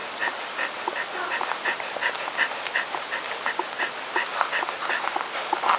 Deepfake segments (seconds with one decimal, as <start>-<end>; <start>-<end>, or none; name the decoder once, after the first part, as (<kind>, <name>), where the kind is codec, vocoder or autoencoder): none